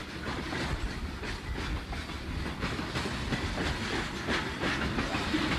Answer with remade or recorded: recorded